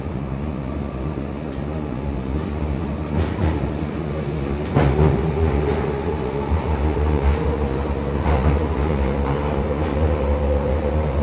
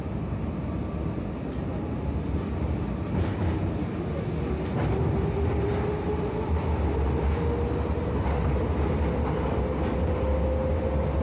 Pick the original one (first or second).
second